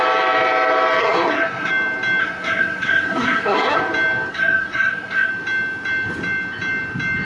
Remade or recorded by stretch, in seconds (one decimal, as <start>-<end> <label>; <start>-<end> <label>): 0.0-1.0 recorded; 1.0-1.7 remade; 1.7-2.2 recorded; 2.2-3.8 remade; 3.8-4.3 recorded; 4.3-5.3 remade; 5.3-7.2 recorded